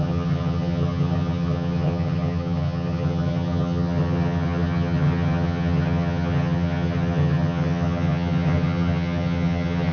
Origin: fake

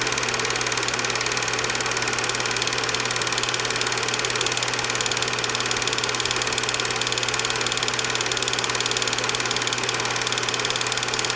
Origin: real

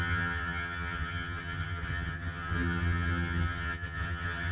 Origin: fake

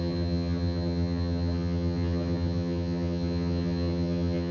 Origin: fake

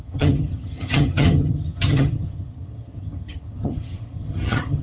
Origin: fake